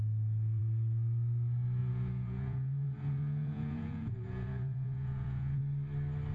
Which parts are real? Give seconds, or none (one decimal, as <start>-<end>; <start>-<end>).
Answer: 0.0-1.8; 5.6-6.3